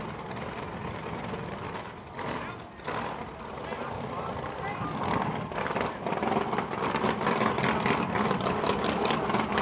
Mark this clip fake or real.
real